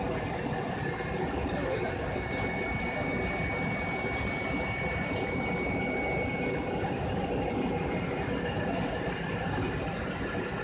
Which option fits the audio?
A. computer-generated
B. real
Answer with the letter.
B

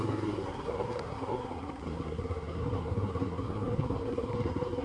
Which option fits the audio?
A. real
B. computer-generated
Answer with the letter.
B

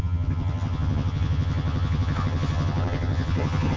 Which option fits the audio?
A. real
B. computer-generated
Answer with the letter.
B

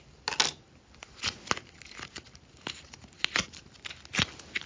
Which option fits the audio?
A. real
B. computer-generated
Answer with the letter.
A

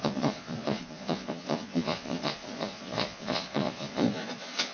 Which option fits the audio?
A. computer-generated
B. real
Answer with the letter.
A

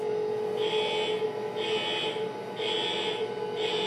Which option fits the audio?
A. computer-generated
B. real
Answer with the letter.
B